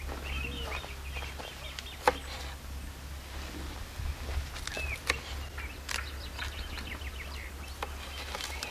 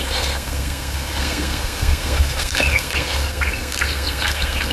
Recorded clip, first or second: first